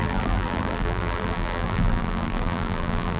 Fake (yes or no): yes